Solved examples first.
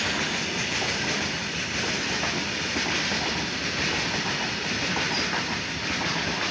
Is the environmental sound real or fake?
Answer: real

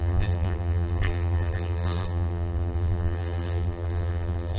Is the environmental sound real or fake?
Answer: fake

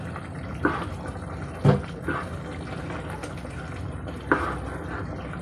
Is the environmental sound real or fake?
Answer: real